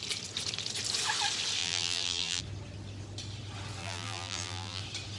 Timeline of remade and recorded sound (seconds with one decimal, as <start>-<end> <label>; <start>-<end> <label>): 0.0-1.6 recorded; 1.6-2.4 remade; 2.4-3.8 recorded; 3.8-4.8 remade; 4.8-5.2 recorded